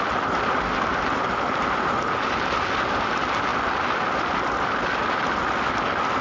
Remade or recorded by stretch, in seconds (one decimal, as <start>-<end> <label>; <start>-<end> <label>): 0.0-6.2 recorded